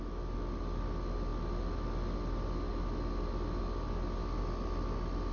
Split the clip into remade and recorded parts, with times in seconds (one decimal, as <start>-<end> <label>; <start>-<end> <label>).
0.0-5.3 recorded

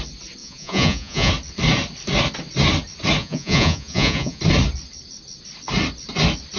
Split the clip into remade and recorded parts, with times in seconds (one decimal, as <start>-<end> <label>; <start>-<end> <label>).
0.0-0.4 recorded; 0.4-1.3 remade; 1.3-3.2 recorded; 3.2-4.4 remade; 4.4-6.6 recorded

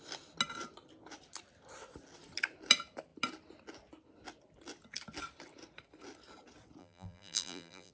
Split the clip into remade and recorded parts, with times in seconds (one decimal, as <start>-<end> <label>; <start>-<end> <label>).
0.0-6.8 recorded; 6.8-7.9 remade